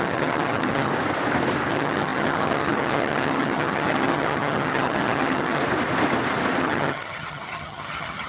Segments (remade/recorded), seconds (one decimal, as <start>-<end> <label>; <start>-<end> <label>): 0.0-0.9 remade; 0.9-1.7 recorded; 1.7-5.6 remade; 5.6-6.6 recorded; 6.6-8.3 remade